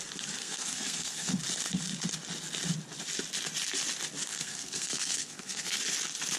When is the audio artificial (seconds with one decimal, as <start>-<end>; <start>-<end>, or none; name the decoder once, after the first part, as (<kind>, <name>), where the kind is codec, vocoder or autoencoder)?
0.4-1.3 (codec, SNAC); 4.3-5.8